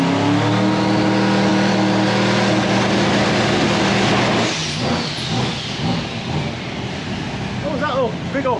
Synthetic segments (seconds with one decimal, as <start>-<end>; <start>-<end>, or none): none